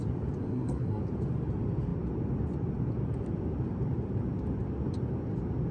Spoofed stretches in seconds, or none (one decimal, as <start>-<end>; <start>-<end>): 0.4-1.0